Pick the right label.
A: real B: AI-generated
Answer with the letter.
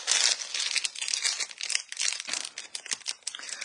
A